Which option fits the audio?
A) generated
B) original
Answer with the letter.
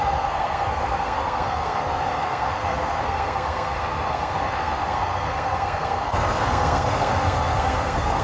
A